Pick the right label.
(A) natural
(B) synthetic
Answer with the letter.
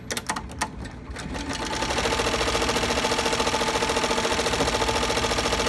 A